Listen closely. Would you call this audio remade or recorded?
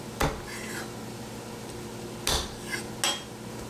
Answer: recorded